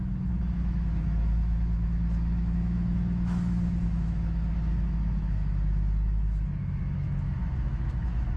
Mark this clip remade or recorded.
remade